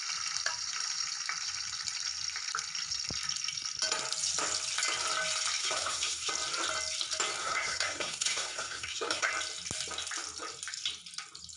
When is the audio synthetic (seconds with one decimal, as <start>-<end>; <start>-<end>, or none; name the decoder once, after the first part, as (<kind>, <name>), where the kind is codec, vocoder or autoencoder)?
5.6-6.3 (codec, SNAC); 7.4-9.3